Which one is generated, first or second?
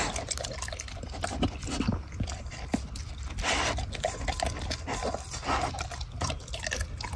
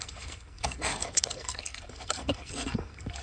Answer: second